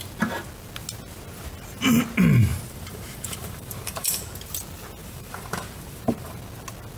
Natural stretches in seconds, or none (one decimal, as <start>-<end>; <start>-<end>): 0.0-2.5; 4.2-5.0; 6.4-7.0